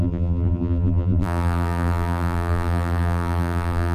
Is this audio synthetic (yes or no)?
yes